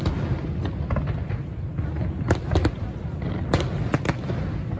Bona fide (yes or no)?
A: yes